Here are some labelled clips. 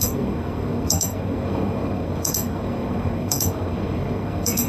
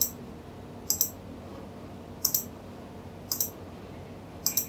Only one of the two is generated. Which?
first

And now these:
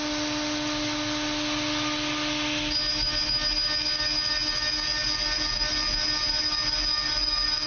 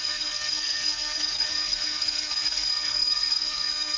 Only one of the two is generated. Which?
second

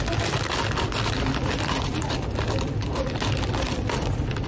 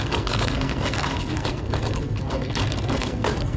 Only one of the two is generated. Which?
second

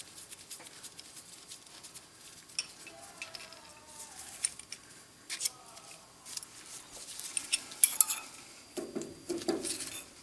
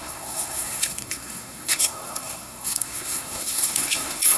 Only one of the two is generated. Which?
second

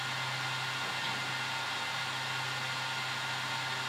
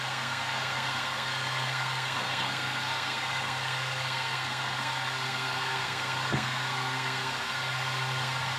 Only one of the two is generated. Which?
second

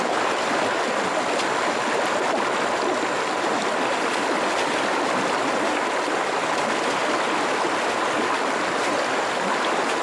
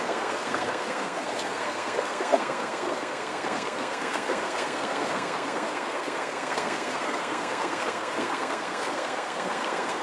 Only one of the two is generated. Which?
second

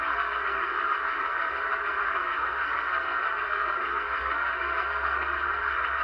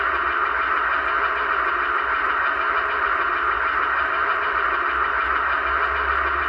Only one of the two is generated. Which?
first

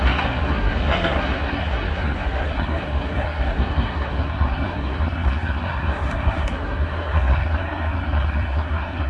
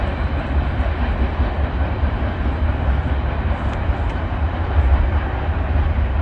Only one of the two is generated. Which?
first